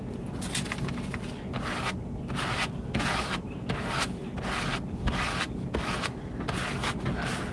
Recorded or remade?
recorded